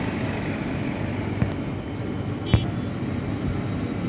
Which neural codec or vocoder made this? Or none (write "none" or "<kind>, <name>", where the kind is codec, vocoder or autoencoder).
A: none